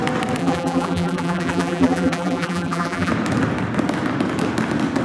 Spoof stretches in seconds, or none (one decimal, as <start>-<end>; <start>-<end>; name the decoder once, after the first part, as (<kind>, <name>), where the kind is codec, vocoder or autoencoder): 0.4-3.1 (vocoder, BigVGAN v2)